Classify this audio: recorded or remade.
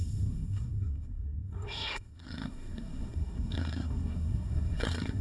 remade